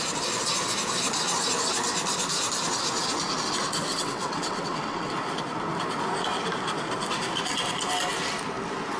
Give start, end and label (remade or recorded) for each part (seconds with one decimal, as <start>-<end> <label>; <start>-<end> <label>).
0.0-3.9 recorded; 3.9-5.1 remade; 5.1-9.0 recorded